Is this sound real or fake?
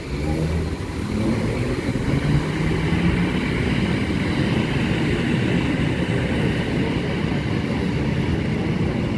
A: real